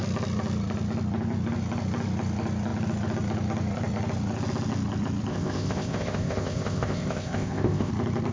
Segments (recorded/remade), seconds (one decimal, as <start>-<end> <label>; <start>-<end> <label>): 0.0-5.3 recorded; 5.3-7.9 remade; 7.9-8.3 recorded